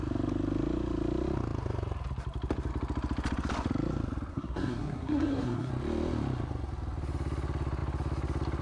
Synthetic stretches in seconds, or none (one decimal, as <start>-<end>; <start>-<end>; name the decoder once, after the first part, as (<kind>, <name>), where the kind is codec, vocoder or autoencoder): 4.3-5.7 (codec, SNAC)